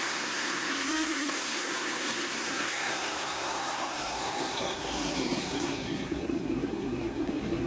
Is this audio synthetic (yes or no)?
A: yes